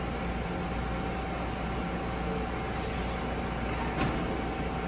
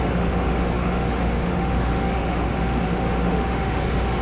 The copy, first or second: second